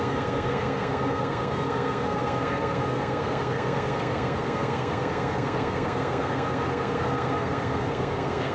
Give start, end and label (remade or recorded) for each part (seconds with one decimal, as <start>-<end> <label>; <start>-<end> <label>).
0.0-8.5 remade